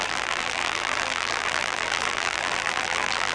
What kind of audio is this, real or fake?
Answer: fake